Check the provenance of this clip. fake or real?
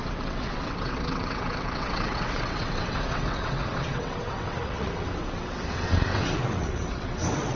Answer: fake